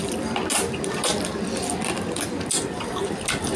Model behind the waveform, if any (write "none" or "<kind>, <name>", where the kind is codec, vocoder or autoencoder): none